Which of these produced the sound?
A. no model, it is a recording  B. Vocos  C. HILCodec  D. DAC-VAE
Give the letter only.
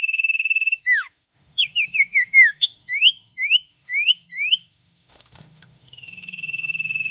D